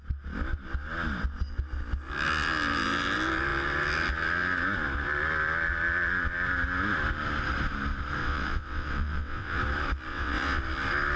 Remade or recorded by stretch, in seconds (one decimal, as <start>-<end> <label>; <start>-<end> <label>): 0.0-8.2 recorded; 8.2-9.6 remade; 9.6-10.1 recorded; 10.1-10.6 remade; 10.6-11.2 recorded